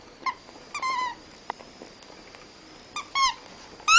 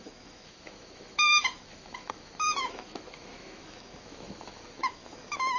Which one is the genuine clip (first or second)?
first